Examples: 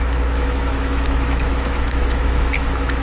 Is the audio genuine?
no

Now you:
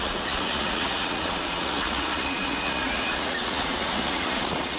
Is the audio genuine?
no